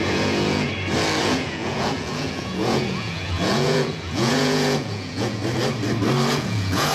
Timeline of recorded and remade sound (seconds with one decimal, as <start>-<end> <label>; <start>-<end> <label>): 0.0-0.7 remade; 0.7-1.2 recorded; 1.2-5.4 remade; 5.4-6.3 recorded; 6.3-6.9 remade